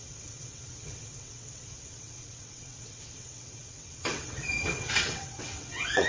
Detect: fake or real fake